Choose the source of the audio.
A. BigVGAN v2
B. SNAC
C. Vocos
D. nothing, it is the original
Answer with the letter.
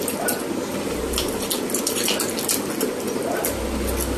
D